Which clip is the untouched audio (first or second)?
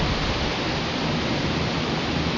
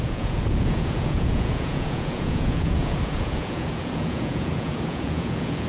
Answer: first